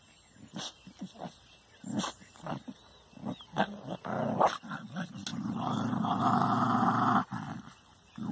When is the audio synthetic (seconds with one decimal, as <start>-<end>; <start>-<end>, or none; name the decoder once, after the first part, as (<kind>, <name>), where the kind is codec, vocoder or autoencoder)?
5.3-6.2 (vocoder, BigVGAN v2)